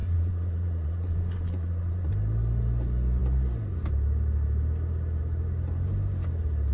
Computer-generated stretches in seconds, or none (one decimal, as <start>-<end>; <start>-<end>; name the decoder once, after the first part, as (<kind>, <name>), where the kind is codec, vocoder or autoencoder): 0.0-2.1 (vocoder, Vocos)